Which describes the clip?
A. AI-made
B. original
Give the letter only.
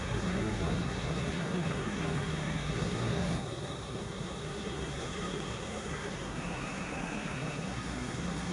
A